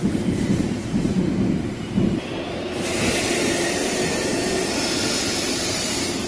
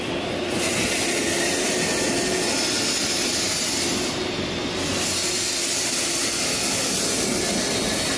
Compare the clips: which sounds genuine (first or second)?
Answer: second